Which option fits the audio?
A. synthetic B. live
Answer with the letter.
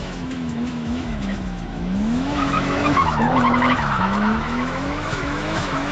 A